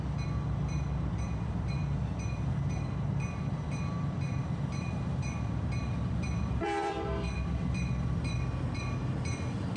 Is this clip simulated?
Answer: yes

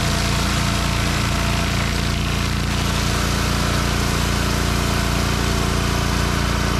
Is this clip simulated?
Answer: no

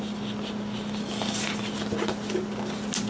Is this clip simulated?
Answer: no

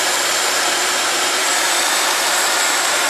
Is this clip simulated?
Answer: yes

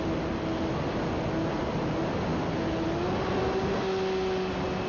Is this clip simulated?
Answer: no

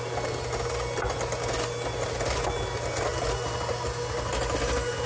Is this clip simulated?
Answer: no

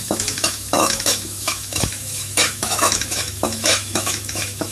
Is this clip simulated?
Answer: yes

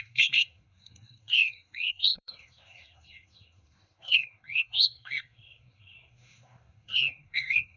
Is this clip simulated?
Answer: yes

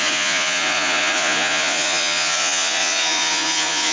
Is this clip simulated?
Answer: yes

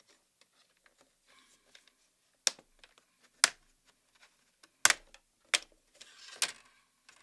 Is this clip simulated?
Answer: no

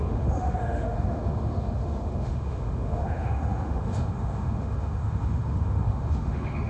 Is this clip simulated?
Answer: yes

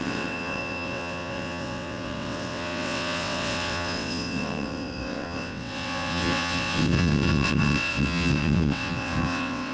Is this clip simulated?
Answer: yes